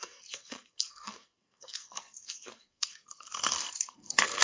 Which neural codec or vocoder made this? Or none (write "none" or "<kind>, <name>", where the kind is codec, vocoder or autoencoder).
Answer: codec, SNAC